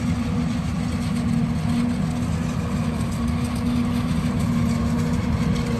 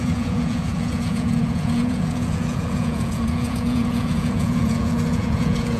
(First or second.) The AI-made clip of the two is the second